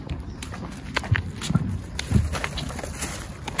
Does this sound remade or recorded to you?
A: recorded